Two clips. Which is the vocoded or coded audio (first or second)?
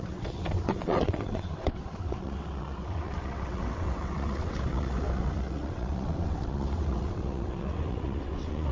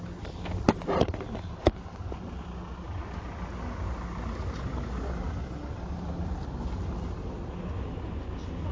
first